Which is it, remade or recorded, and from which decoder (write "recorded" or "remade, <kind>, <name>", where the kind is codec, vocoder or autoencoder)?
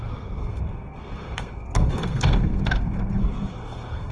remade, codec, SNAC